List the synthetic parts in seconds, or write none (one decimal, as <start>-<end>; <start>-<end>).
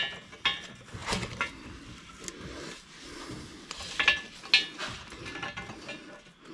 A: none